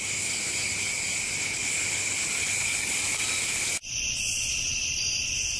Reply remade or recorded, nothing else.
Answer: recorded